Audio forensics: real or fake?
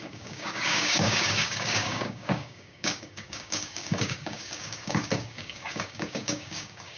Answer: fake